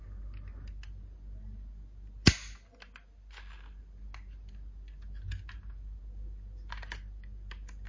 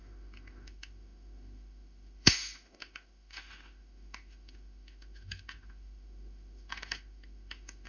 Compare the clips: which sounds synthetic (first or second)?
second